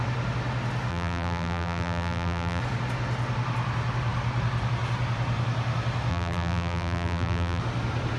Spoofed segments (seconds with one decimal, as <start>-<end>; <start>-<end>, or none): 0.9-2.6; 6.1-7.6